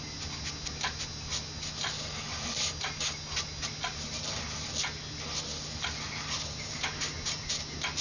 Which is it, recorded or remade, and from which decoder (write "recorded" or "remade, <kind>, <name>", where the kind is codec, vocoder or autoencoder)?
recorded